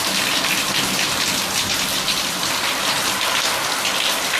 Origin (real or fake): fake